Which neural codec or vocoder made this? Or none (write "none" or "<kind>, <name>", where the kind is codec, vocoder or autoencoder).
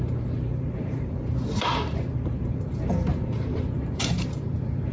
vocoder, BigVGAN v2